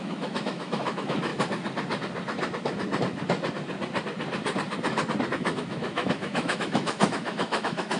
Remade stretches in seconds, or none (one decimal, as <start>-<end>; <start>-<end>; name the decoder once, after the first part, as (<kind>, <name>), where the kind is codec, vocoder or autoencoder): 0.0-1.3 (autoencoder, DAC-VAE); 5.3-8.0